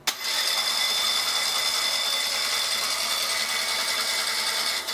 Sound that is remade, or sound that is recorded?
recorded